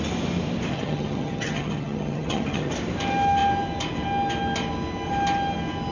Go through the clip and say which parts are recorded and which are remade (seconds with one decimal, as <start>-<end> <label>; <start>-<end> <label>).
0.0-0.7 recorded; 0.7-2.7 remade; 2.7-5.9 recorded